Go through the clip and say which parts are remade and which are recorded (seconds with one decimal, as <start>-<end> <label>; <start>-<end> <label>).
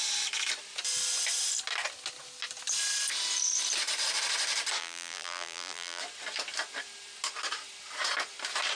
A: 0.0-4.8 recorded; 4.8-6.0 remade; 6.0-8.8 recorded